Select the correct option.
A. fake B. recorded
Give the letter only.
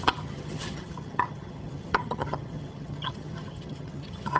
A